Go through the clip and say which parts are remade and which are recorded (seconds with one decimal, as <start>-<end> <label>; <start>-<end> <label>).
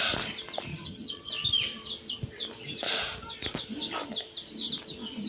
0.0-0.7 recorded; 0.7-1.3 remade; 1.3-5.3 recorded